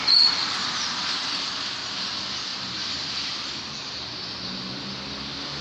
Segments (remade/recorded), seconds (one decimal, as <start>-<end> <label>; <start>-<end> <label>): 0.0-0.4 recorded; 0.4-1.5 remade; 1.5-2.5 recorded; 2.5-3.3 remade; 3.3-5.6 recorded

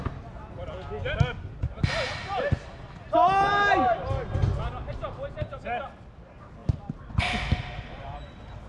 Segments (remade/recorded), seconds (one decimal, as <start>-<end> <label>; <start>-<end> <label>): 0.0-8.7 recorded